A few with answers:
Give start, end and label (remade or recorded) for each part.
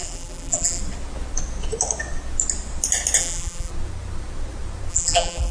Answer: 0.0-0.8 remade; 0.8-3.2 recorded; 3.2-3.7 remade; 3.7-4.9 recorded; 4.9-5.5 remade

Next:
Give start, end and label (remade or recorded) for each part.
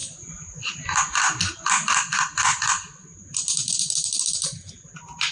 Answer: 0.0-1.7 remade; 1.7-3.6 recorded; 3.6-4.7 remade; 4.7-5.3 recorded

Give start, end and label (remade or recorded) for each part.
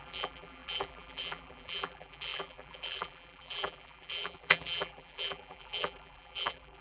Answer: 0.0-6.8 remade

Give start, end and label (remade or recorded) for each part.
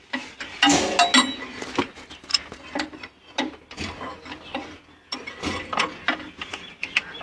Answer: 0.0-7.2 recorded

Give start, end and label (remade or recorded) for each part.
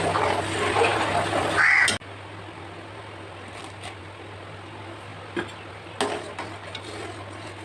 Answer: 0.0-7.6 recorded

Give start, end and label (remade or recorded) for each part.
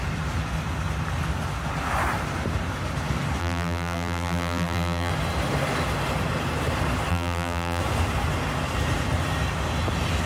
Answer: 0.0-3.4 recorded; 3.4-5.1 remade; 5.1-7.1 recorded; 7.1-7.8 remade; 7.8-10.3 recorded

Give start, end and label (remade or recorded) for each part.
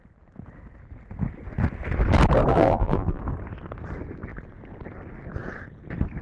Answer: 0.0-2.5 recorded; 2.5-3.2 remade; 3.2-6.2 recorded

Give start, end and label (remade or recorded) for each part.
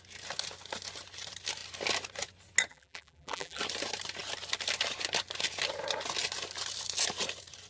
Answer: 0.0-2.7 recorded; 2.7-3.6 remade; 3.6-7.7 recorded